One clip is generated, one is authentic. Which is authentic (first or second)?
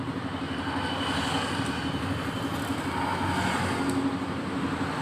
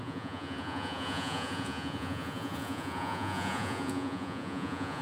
first